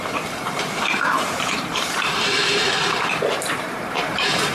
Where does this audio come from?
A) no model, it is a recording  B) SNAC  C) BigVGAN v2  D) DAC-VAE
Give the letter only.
C